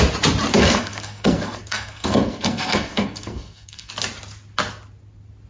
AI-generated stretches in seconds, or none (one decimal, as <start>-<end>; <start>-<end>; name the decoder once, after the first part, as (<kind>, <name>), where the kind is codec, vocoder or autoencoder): 0.6-3.9 (codec, SNAC)